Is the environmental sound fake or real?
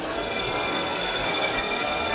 fake